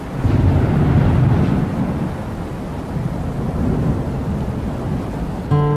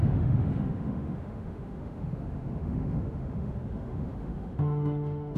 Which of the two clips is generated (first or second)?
second